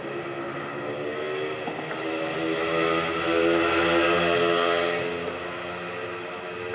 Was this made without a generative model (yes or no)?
yes